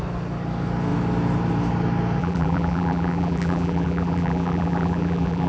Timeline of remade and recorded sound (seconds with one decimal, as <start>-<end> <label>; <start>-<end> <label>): 0.0-2.2 recorded; 2.2-5.5 remade